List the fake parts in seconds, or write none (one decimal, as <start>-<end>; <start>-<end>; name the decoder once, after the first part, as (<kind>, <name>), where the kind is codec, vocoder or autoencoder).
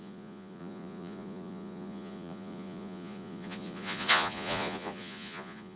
0.0-5.8 (vocoder, Vocos)